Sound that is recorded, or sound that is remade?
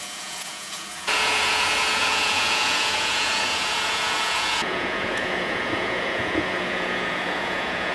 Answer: remade